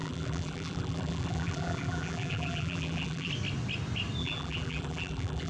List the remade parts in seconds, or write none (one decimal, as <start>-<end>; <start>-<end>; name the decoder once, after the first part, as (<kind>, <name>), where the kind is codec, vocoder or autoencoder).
0.0-3.3 (vocoder, BigVGAN v2); 4.2-5.5